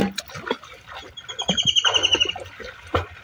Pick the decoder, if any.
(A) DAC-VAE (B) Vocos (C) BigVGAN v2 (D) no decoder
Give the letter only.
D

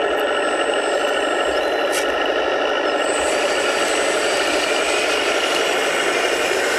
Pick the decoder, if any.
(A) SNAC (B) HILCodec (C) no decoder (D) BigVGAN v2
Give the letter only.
C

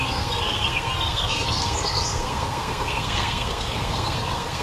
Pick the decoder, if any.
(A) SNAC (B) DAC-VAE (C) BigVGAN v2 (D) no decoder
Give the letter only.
A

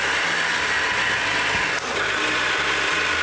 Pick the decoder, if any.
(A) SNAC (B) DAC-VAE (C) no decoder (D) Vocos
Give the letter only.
C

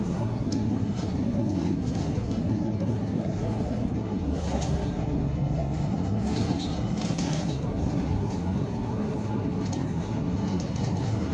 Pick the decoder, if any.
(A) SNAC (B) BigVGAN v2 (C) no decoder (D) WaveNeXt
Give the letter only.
A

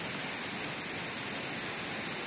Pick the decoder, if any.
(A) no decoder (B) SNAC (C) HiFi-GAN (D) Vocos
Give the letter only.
A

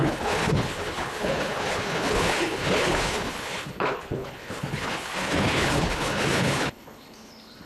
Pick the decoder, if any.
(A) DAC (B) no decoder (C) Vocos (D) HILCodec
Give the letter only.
D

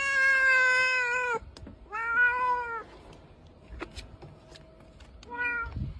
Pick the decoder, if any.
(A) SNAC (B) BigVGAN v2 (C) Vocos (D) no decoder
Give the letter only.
D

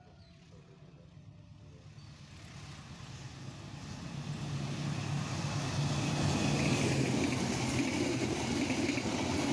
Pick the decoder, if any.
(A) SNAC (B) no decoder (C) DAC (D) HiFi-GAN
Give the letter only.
B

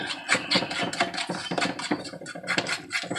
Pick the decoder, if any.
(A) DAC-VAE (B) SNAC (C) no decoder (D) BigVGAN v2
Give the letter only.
C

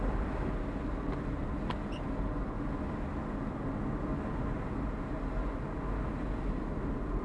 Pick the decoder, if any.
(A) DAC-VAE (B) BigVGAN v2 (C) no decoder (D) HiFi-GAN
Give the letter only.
C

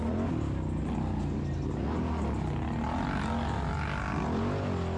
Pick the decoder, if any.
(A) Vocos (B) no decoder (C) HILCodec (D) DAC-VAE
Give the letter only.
B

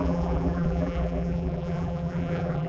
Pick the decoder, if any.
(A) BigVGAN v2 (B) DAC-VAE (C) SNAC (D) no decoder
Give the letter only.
A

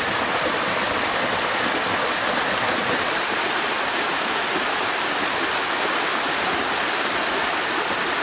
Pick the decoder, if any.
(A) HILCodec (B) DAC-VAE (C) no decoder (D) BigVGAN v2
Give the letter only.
D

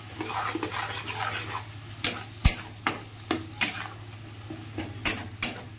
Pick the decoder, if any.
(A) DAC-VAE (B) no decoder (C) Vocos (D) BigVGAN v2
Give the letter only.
B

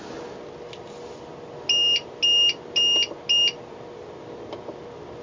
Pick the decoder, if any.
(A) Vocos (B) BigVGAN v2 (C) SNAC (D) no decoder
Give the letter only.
D